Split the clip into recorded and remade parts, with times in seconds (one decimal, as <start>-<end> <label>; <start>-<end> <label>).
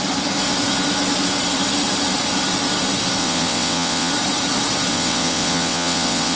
0.0-3.2 recorded; 3.2-4.1 remade; 4.1-4.9 recorded; 4.9-6.4 remade